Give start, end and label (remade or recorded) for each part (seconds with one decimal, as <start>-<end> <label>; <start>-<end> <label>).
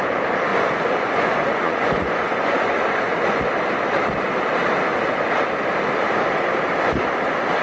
0.0-0.5 recorded; 0.5-3.4 remade; 3.4-7.6 recorded